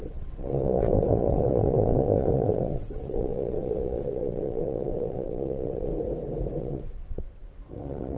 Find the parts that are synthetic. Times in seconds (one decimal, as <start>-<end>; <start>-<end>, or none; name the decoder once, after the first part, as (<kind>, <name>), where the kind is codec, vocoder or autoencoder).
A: 0.0-5.9 (vocoder, WaveNeXt); 6.6-8.2

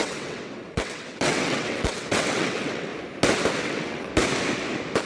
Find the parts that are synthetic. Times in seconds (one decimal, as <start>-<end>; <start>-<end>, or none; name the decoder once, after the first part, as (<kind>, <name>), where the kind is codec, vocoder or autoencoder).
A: 0.0-2.9 (vocoder, WaveNeXt); 3.6-4.1

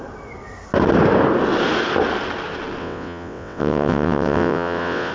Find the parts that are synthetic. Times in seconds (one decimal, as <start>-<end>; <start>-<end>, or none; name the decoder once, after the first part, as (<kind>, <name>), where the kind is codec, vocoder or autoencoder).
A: 2.8-5.1 (vocoder, WaveNeXt)

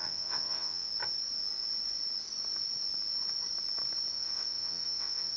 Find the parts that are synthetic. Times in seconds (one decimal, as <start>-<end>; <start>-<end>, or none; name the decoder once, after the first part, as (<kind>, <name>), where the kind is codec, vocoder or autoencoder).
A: 0.0-0.9 (vocoder, WaveNeXt); 4.1-5.4

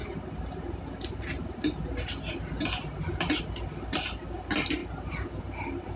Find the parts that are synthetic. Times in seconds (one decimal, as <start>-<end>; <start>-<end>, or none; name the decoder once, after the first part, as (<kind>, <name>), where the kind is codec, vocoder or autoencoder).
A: none